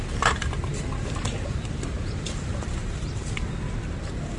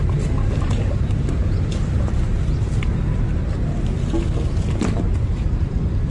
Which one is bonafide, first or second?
second